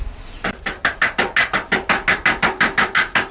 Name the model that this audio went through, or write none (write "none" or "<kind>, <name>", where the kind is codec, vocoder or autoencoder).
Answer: none